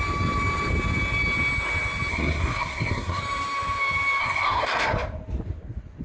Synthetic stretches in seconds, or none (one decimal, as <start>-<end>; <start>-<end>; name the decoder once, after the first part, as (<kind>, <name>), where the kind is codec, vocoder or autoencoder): 2.1-3.2 (codec, SNAC); 4.2-4.9